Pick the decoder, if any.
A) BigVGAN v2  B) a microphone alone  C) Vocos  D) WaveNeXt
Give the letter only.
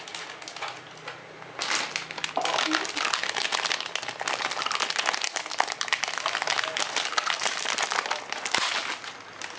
B